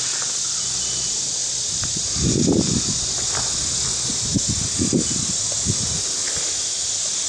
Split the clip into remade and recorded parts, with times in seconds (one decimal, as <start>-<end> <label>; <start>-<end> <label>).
0.0-1.4 recorded; 1.4-3.4 remade; 3.4-7.3 recorded